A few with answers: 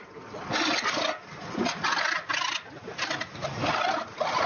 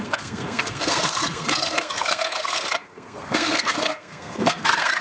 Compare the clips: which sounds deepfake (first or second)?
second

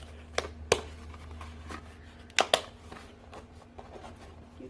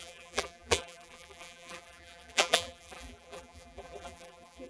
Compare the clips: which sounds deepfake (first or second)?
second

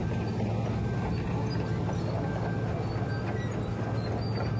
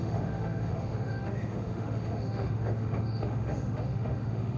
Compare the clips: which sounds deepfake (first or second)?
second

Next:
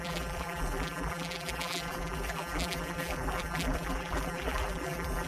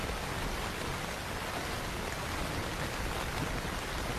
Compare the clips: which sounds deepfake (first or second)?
first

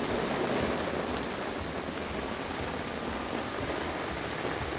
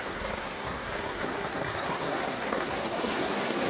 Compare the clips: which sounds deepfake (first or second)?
second